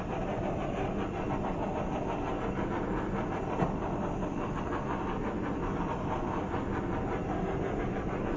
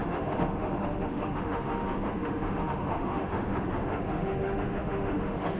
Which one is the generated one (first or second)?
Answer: second